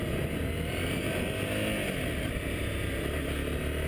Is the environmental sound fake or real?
real